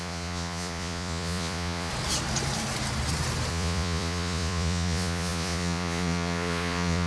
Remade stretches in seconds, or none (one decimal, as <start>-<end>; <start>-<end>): 0.0-1.9; 3.5-7.1